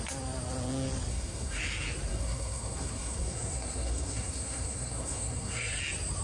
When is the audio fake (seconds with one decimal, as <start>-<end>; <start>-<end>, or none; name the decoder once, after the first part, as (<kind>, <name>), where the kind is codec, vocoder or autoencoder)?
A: 1.1-1.6 (codec, SNAC); 2.1-5.8